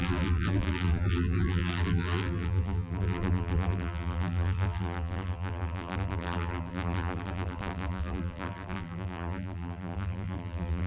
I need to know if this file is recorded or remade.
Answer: remade